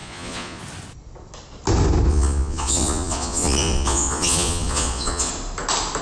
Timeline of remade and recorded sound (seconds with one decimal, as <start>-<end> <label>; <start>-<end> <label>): 0.0-0.6 remade; 0.6-2.1 recorded; 2.1-5.3 remade; 5.3-6.0 recorded